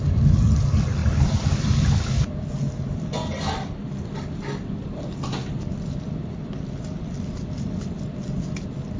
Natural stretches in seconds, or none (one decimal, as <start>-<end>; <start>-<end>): 1.0-5.0; 8.1-9.0